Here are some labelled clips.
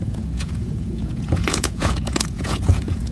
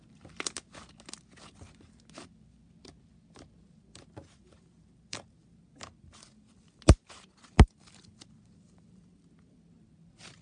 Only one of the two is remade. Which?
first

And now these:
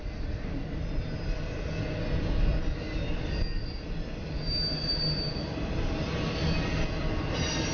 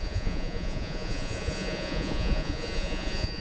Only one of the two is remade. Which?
second